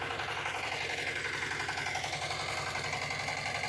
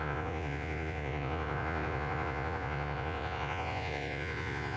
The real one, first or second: first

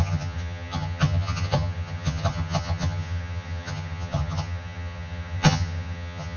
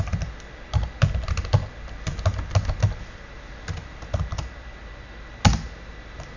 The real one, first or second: second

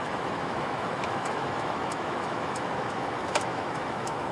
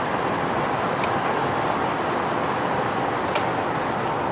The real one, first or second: second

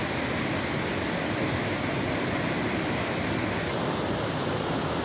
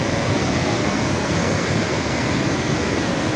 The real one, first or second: first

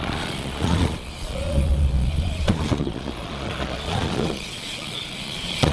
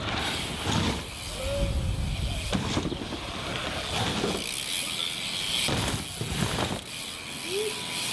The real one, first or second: second